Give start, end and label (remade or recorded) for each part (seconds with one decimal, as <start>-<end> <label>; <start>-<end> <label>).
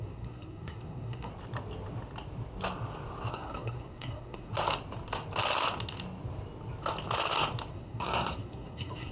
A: 0.0-1.3 remade; 1.3-3.3 recorded; 3.3-4.5 remade; 4.5-7.7 recorded; 7.7-9.1 remade